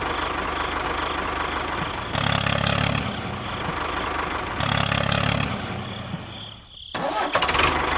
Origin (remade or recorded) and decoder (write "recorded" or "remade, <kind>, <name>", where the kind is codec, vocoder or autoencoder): recorded